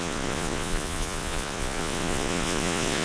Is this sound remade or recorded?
remade